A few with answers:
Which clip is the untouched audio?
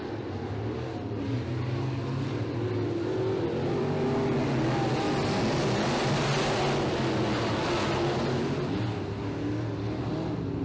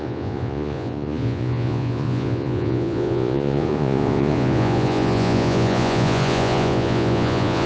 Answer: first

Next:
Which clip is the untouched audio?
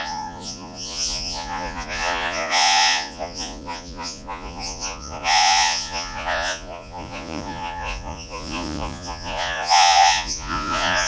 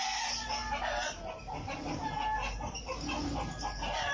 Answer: second